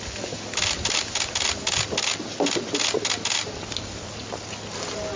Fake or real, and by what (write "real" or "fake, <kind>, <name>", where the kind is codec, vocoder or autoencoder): real